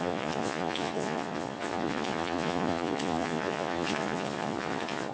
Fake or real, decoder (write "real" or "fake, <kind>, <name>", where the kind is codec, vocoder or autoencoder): fake, vocoder, Vocos